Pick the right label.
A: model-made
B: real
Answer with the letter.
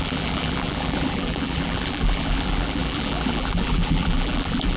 A